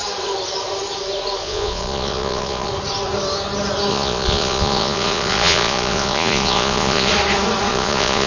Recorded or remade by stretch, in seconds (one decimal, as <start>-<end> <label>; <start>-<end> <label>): 0.0-1.4 recorded; 1.4-2.7 remade; 2.7-3.9 recorded; 3.9-7.1 remade; 7.1-7.7 recorded; 7.7-8.3 remade